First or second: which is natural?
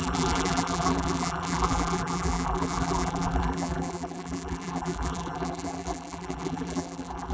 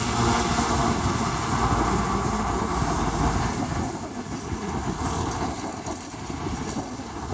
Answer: second